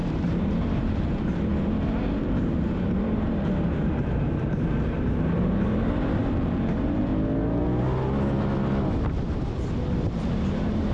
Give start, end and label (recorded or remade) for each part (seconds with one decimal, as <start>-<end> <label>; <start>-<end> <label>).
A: 0.0-7.1 remade; 7.1-9.8 recorded; 9.8-10.9 remade